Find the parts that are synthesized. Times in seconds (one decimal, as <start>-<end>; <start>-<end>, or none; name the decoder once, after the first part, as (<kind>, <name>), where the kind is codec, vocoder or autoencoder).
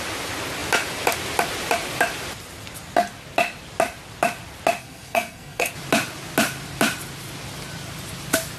4.8-5.7 (codec, SNAC)